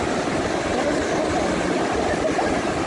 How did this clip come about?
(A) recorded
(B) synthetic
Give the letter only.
A